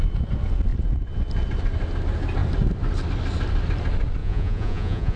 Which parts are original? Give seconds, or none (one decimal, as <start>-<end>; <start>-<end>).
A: 0.0-4.2